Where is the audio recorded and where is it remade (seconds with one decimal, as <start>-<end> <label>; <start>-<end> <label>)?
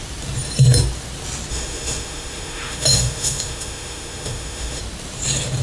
0.0-1.5 recorded; 1.5-4.8 remade; 4.8-5.6 recorded